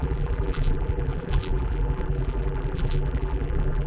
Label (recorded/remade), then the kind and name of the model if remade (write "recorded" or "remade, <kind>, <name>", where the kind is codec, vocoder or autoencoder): remade, vocoder, BigVGAN v2